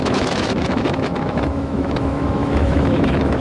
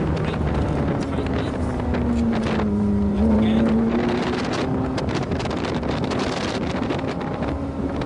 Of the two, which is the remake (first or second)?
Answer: first